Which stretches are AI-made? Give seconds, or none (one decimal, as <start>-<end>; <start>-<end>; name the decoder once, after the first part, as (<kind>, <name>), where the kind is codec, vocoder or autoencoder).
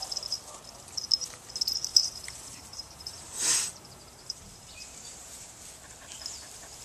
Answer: 1.9-5.5 (vocoder, BigVGAN v2)